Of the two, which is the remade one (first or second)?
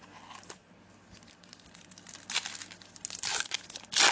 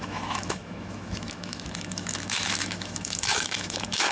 second